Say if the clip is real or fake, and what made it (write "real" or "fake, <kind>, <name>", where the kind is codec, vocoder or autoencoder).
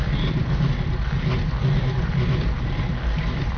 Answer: real